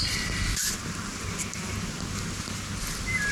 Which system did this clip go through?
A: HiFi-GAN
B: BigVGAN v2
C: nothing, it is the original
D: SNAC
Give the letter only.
C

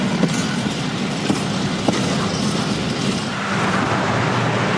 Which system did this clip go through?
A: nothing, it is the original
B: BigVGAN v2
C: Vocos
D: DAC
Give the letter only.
A